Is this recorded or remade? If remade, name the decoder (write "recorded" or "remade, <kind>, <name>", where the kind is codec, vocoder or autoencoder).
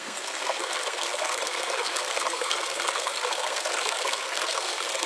remade, codec, SNAC